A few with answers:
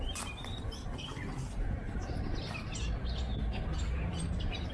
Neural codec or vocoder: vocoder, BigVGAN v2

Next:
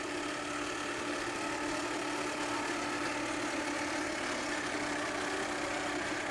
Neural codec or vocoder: none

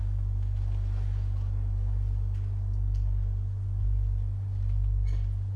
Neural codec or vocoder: none